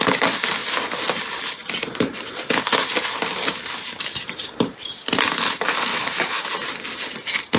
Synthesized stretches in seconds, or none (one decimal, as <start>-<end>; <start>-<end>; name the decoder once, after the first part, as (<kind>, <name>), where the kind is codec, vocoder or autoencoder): 5.9-6.5 (autoencoder, DAC-VAE)